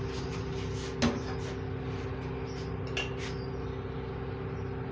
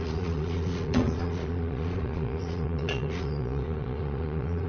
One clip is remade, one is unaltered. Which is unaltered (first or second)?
first